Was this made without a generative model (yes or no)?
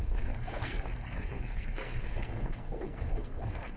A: no